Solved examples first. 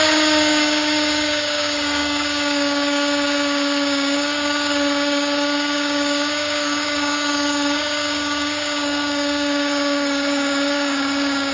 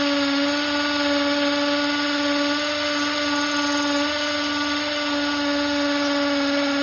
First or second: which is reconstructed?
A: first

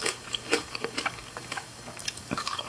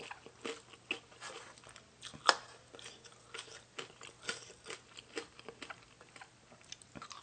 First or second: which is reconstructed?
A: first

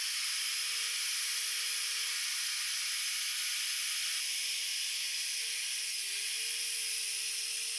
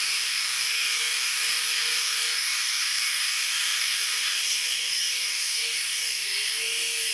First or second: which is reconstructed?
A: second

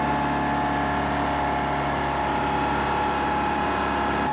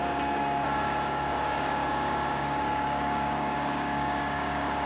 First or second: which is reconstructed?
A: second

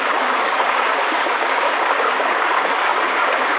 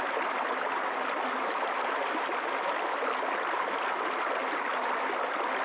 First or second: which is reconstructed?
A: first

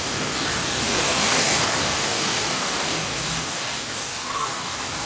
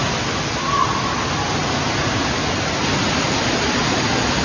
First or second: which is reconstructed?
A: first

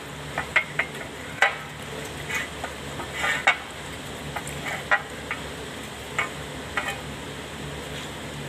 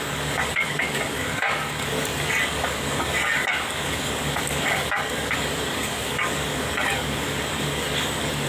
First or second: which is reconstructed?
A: second